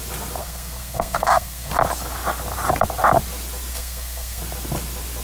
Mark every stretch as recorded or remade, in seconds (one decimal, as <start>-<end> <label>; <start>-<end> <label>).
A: 0.0-0.4 recorded; 0.4-1.7 remade; 1.7-3.7 recorded; 3.7-4.4 remade; 4.4-5.2 recorded